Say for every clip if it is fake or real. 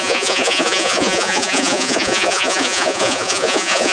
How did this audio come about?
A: fake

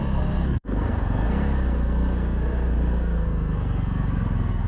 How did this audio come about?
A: fake